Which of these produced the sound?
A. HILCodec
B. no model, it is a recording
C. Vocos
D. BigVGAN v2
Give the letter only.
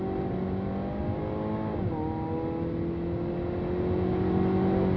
B